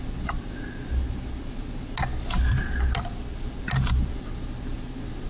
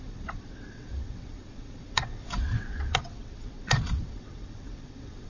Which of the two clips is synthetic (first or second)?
second